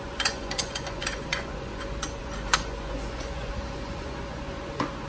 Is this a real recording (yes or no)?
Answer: no